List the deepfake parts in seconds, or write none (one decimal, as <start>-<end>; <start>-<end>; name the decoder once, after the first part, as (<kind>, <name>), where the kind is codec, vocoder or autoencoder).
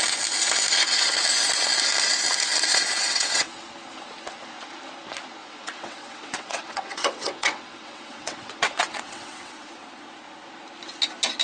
2.7-3.4 (vocoder, WaveNeXt); 5.4-10.1